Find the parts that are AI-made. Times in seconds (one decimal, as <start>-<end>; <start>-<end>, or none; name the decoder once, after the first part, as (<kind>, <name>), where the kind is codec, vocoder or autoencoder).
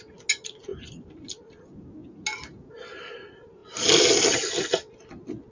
0.7-1.6 (vocoder, BigVGAN v2)